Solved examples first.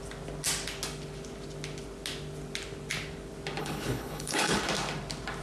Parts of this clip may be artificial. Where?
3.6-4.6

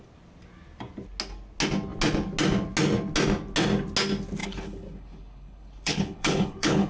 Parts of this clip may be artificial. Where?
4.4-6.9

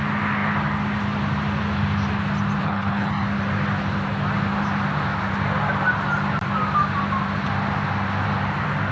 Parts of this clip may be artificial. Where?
2.6-3.1

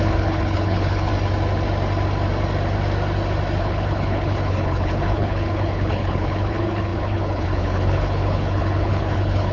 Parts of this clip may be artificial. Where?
0.0-1.1; 3.6-9.5

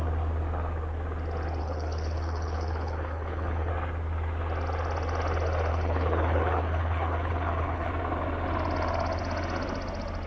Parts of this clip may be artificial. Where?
1.6-3.7; 5.7-7.9

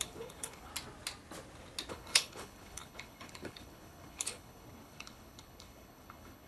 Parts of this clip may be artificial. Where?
0.0-0.7; 1.9-6.5